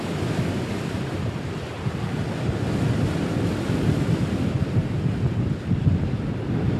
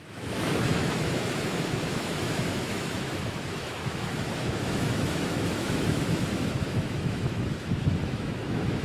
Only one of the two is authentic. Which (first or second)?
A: first